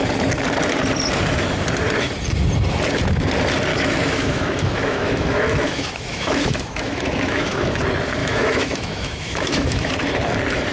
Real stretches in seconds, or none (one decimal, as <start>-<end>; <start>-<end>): 0.0-3.7; 7.8-8.2; 9.9-10.7